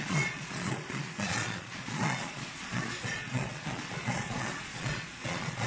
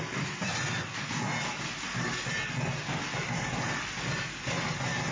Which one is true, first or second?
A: second